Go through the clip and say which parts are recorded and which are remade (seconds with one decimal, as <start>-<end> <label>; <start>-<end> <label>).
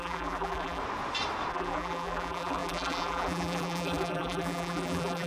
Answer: 0.0-0.8 remade; 0.8-1.5 recorded; 1.5-5.3 remade